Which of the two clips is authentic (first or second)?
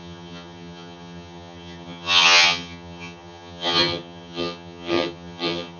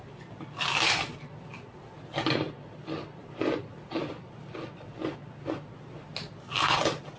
second